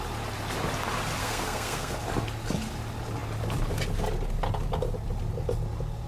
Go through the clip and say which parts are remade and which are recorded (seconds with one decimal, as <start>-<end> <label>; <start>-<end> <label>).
0.0-1.2 recorded; 1.2-1.9 remade; 1.9-6.1 recorded